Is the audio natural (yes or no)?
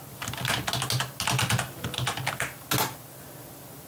yes